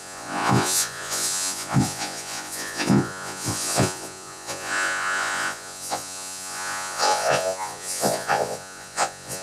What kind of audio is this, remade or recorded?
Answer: remade